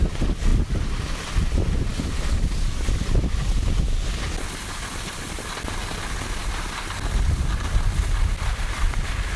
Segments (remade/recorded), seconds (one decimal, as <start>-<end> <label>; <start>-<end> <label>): 0.0-9.4 recorded